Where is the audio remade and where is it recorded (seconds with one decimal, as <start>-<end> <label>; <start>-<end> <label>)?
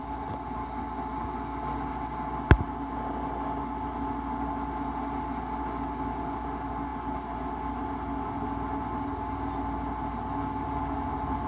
0.0-11.5 recorded